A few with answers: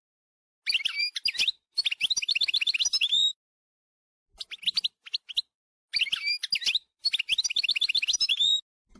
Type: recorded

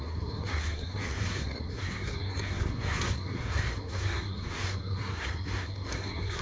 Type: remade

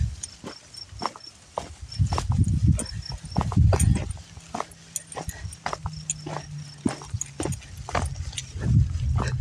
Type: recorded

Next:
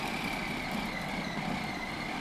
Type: recorded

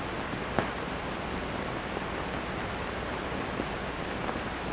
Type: recorded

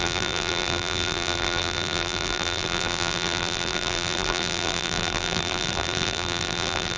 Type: remade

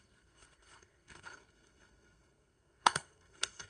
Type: remade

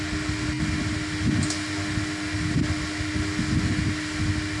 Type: recorded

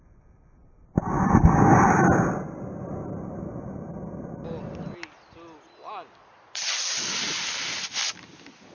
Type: recorded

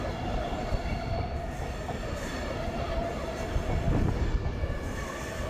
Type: recorded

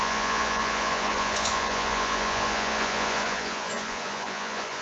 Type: remade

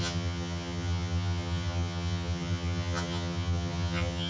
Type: remade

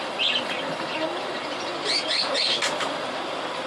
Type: recorded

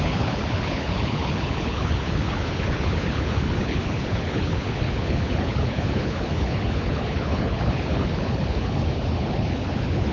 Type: remade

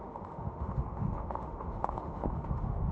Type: remade